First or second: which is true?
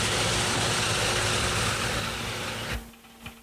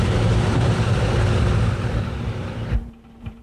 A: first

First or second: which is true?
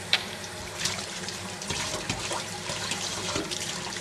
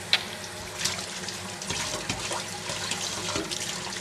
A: second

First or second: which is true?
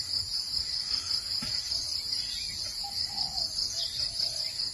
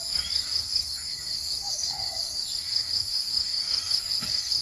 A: first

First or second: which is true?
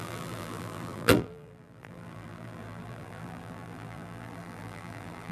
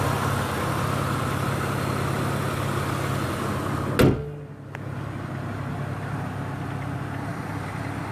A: second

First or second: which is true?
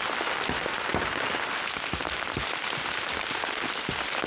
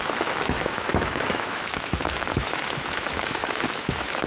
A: first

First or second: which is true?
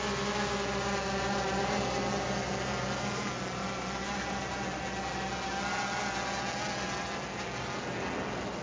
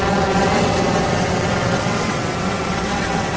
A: first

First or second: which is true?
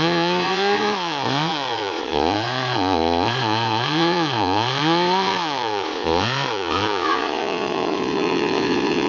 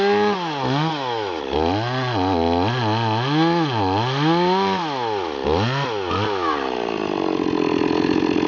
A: second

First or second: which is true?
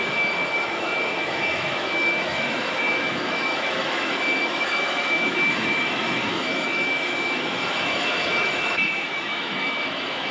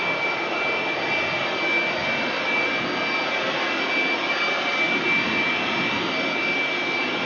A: second